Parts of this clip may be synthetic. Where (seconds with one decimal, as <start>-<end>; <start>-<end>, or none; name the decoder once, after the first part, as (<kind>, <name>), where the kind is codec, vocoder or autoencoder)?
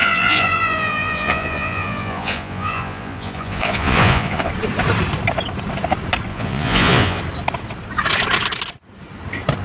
0.0-4.5 (vocoder, Vocos); 6.3-7.2